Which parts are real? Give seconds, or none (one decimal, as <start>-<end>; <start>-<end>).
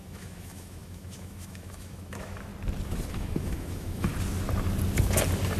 2.5-3.1; 4.1-5.6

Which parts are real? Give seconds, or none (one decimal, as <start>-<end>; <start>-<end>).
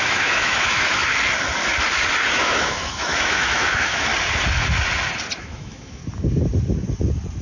1.0-2.3; 4.1-5.4; 6.0-7.4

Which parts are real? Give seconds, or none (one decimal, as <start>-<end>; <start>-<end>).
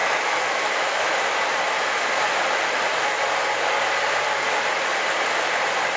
1.4-6.0